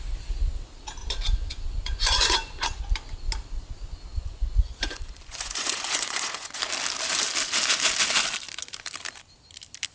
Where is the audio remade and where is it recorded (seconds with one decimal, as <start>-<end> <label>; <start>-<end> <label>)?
0.0-1.0 recorded; 1.0-2.8 remade; 2.8-4.1 recorded; 4.1-6.6 remade; 6.6-9.9 recorded